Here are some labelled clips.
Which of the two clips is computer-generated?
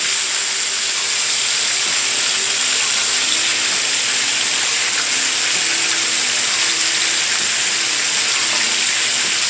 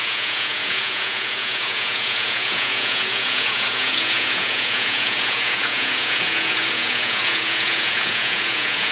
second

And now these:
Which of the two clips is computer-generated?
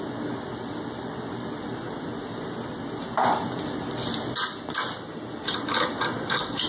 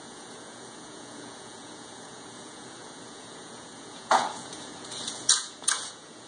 second